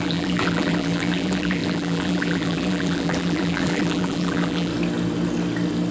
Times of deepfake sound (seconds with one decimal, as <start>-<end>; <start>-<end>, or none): 0.0-4.7